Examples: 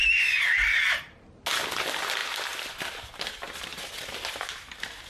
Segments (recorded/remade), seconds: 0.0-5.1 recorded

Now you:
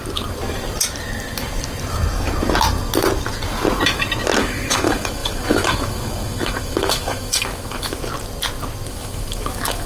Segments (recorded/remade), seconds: 0.0-4.4 recorded; 4.4-8.0 remade; 8.0-8.9 recorded; 8.9-9.9 remade

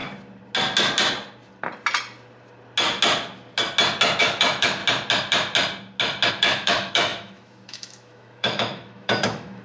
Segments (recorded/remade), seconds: 0.0-4.2 recorded; 4.2-4.8 remade; 4.8-6.3 recorded; 6.3-9.6 remade

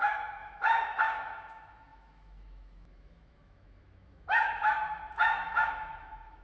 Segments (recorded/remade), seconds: 0.0-6.4 remade

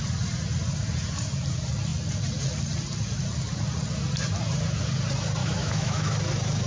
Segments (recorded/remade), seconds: 0.0-5.4 recorded; 5.4-6.2 remade; 6.2-6.7 recorded

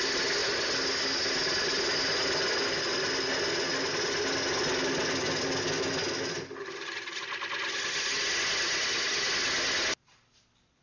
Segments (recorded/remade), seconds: 0.0-10.8 recorded

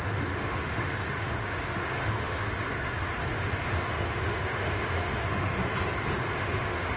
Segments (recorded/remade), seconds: 0.0-2.6 remade; 2.6-3.2 recorded; 3.2-5.6 remade; 5.6-6.2 recorded; 6.2-7.0 remade

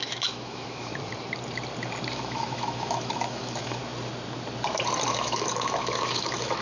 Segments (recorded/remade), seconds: 0.0-0.9 remade; 0.9-2.1 recorded; 2.1-3.8 remade; 3.8-5.1 recorded; 5.1-6.6 remade